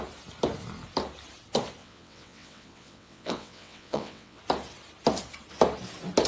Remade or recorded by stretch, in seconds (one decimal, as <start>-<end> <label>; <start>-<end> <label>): 0.0-1.8 recorded; 1.8-4.4 remade; 4.4-6.3 recorded